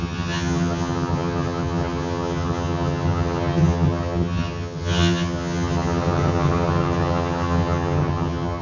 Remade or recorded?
remade